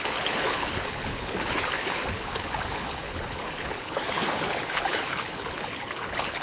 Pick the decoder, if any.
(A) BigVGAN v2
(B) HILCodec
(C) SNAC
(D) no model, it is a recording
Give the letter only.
B